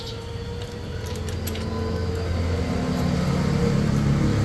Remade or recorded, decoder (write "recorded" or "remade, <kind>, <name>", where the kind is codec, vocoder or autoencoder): recorded